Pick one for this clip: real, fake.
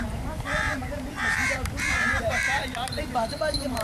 fake